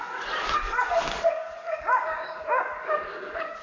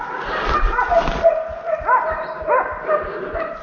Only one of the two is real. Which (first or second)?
second